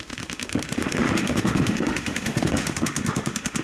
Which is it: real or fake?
fake